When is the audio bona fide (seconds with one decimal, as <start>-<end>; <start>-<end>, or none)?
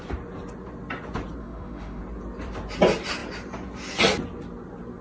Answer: 0.0-1.4; 2.0-5.0